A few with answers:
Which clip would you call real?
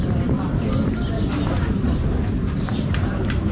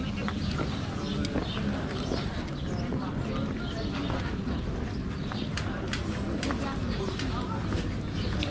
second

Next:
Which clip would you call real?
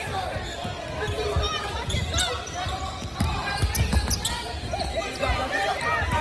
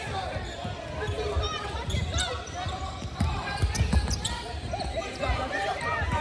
first